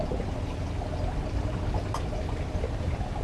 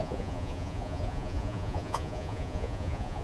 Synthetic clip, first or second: second